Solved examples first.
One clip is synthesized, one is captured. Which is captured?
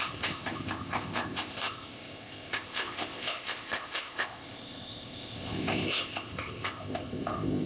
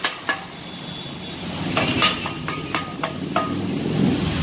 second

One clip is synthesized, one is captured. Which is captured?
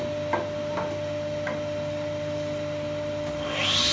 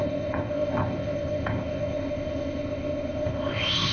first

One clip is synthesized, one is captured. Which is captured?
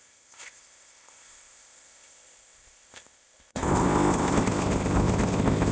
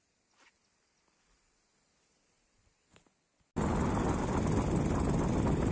second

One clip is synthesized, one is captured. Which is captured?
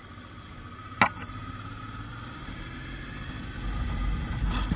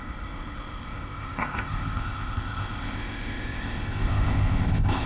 first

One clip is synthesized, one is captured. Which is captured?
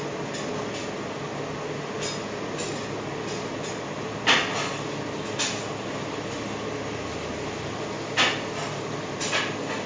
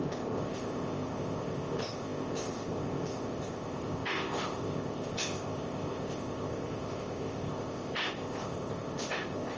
first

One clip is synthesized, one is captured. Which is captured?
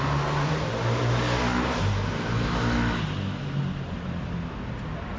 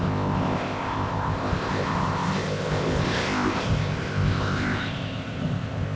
first